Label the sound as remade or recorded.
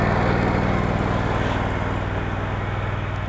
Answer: recorded